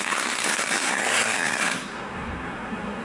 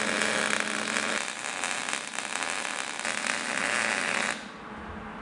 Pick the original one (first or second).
second